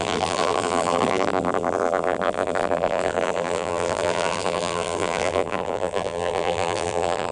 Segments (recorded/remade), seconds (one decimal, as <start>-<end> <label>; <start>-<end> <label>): 0.0-7.3 remade